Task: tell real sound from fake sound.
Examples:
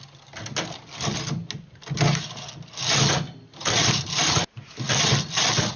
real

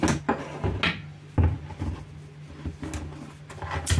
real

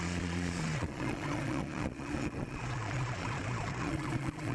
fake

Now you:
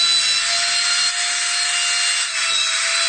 real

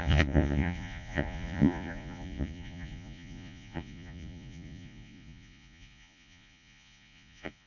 fake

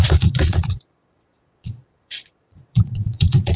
fake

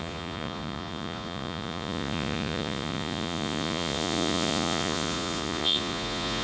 fake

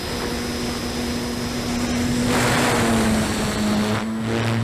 real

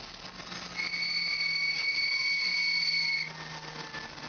real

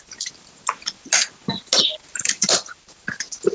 real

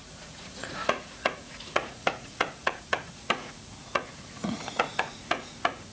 fake